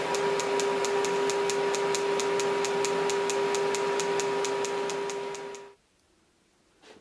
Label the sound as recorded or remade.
recorded